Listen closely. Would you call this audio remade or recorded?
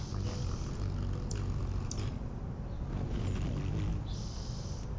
recorded